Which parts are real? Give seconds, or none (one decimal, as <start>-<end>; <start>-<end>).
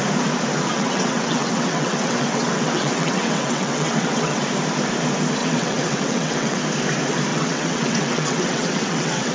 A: 0.0-0.7; 4.4-5.4; 6.6-7.3